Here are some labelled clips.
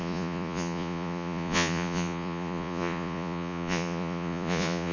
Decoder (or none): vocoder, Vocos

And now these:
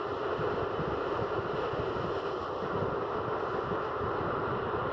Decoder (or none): none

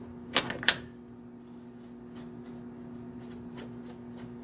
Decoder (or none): none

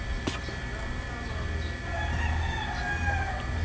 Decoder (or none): none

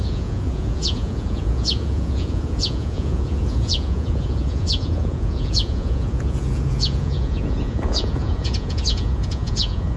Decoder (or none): vocoder, Vocos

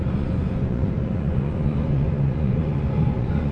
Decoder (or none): vocoder, Vocos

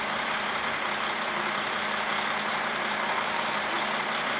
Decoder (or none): none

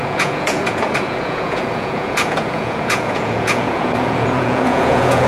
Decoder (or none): vocoder, Vocos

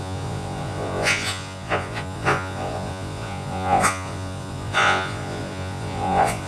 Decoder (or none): vocoder, Vocos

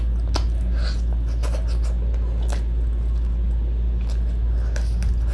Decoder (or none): none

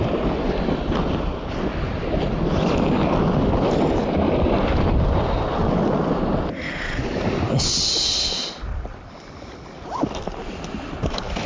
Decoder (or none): none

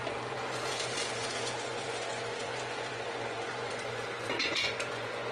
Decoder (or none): vocoder, Vocos